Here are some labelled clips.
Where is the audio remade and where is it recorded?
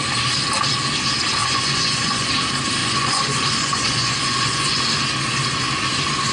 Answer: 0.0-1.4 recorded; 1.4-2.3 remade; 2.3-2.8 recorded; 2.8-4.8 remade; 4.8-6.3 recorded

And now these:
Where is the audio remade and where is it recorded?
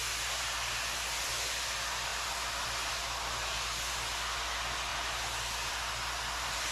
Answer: 0.0-6.7 recorded